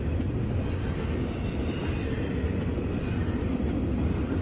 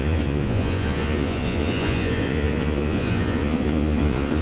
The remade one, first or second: second